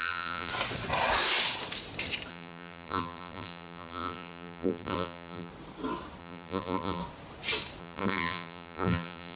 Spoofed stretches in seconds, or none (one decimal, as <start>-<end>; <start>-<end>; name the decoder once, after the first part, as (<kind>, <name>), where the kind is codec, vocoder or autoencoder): 0.0-0.5 (vocoder, BigVGAN v2); 2.3-5.5; 6.2-7.0; 7.8-9.4